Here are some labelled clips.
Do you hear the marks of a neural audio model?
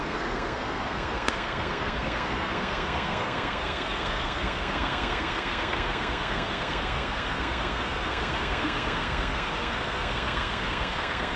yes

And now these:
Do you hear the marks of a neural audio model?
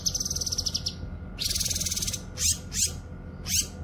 no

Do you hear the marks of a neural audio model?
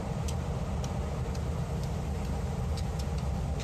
yes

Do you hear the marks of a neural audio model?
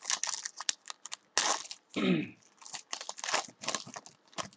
no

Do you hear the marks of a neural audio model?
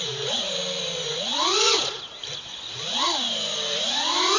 no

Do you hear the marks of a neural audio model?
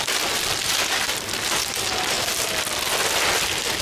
no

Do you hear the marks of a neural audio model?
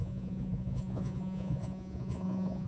yes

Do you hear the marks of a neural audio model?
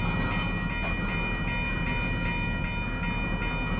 no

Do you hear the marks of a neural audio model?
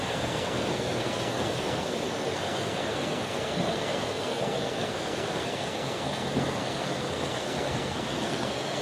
yes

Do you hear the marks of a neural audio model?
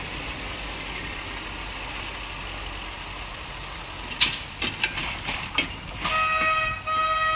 no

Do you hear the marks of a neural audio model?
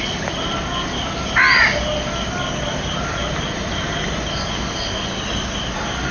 no